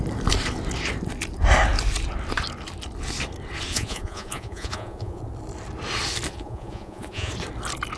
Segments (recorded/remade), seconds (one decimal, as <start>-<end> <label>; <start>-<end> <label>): 0.0-3.7 recorded; 3.7-5.2 remade; 5.2-6.3 recorded; 6.3-7.3 remade; 7.3-8.0 recorded